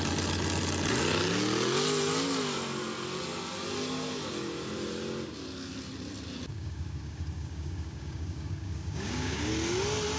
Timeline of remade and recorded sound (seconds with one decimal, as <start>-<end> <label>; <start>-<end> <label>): 0.0-6.5 recorded; 6.5-9.5 remade; 9.5-10.2 recorded